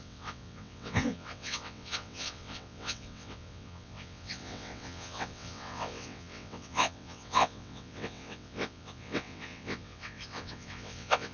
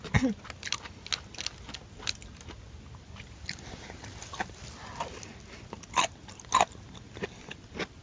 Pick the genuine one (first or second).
second